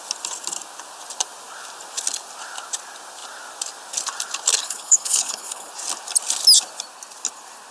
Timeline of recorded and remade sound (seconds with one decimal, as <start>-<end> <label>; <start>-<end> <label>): 0.0-4.6 recorded; 4.6-5.7 remade; 5.7-7.7 recorded